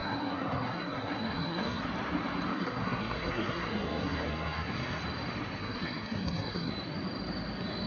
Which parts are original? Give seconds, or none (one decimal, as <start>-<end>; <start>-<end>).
1.8-2.5; 5.0-5.6; 6.7-7.9